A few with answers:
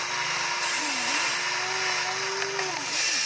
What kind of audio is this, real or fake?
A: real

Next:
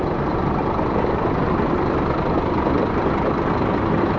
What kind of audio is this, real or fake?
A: fake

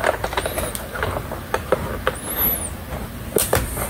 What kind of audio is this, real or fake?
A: real